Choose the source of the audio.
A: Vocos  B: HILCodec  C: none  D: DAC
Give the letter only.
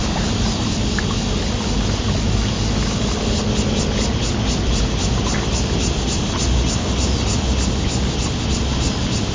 C